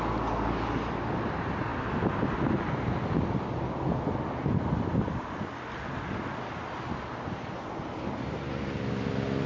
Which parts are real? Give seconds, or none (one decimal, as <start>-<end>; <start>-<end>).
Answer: 0.0-9.5

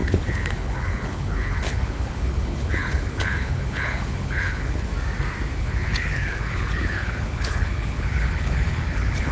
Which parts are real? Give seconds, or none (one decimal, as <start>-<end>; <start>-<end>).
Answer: 4.9-5.6

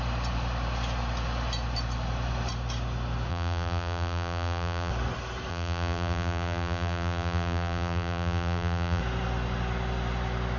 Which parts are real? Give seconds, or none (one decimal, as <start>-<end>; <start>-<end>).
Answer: 0.0-3.3; 4.9-5.5; 9.0-10.6

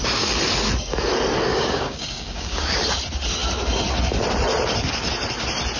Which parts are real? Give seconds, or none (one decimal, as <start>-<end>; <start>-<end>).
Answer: 0.0-1.5; 2.7-5.8

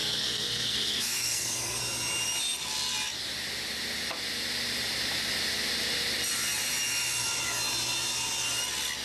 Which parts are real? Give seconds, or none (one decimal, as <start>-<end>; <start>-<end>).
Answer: 1.8-9.0

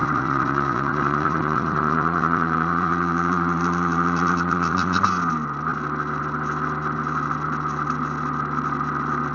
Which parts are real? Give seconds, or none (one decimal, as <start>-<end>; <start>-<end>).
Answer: 5.0-9.3

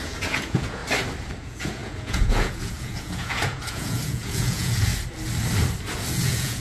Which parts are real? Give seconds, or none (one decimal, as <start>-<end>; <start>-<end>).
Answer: 0.8-1.4; 4.9-6.1

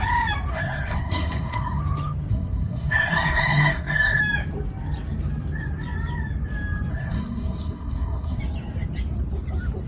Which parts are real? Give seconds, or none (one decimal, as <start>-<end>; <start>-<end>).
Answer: 0.0-0.5; 1.8-2.3; 4.2-6.9; 8.4-9.9